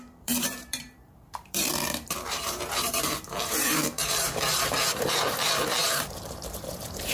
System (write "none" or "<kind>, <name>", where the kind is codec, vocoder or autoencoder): vocoder, BigVGAN v2